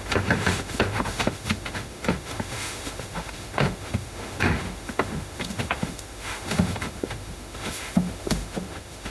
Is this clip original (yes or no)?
no